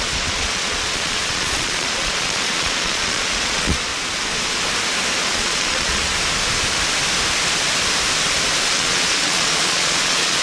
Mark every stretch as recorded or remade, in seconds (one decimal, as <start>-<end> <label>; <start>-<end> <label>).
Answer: 0.0-3.9 remade; 3.9-5.3 recorded; 5.3-6.1 remade; 6.1-8.7 recorded; 8.7-10.4 remade